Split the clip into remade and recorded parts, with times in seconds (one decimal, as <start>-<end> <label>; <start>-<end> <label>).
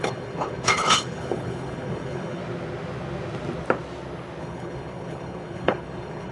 0.0-2.4 remade; 2.4-4.4 recorded; 4.4-6.3 remade